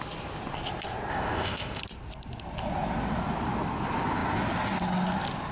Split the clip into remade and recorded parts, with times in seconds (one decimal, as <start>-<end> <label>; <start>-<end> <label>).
0.0-1.1 recorded; 1.1-1.8 remade; 1.8-5.5 recorded